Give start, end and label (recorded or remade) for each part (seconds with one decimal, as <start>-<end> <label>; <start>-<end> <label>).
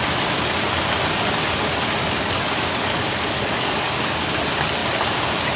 0.0-2.0 recorded; 2.0-4.3 remade; 4.3-5.6 recorded